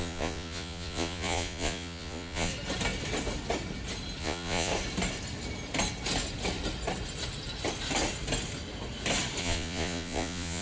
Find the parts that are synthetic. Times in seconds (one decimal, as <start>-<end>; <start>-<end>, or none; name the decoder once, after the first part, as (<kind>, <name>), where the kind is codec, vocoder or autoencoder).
0.0-2.5 (vocoder, Vocos); 4.2-4.7; 9.4-10.6